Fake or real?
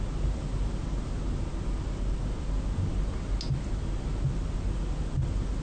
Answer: real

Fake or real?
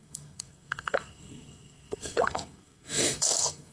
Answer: fake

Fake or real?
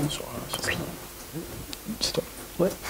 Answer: real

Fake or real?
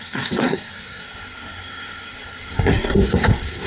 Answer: fake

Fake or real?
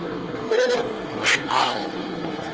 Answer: fake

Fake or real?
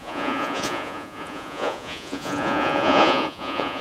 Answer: fake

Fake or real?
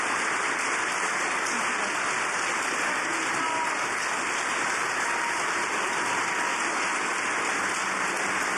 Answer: real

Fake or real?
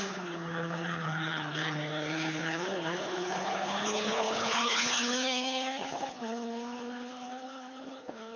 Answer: fake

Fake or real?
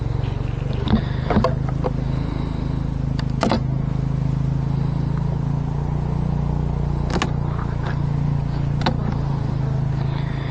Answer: real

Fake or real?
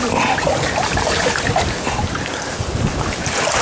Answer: real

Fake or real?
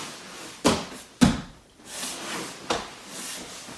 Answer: real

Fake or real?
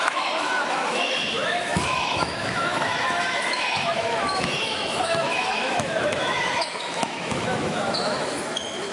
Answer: fake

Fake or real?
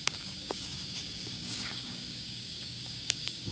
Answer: fake